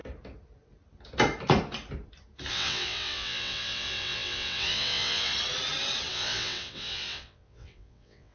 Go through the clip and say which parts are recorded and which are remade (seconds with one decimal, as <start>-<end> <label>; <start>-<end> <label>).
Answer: 0.0-2.5 recorded; 2.5-5.3 remade; 5.3-6.1 recorded; 6.1-8.3 remade

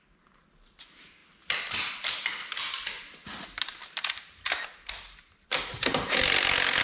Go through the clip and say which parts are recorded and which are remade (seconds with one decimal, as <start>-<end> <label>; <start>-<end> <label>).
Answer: 0.0-6.8 recorded